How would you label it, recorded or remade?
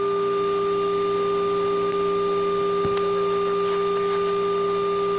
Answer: recorded